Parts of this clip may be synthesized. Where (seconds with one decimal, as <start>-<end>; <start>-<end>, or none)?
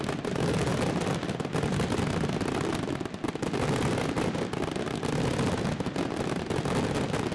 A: none